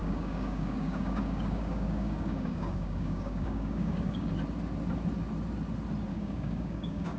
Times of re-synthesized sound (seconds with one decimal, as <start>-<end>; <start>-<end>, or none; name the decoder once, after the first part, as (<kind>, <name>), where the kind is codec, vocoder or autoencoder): 0.0-4.3 (codec, DAC); 6.1-7.2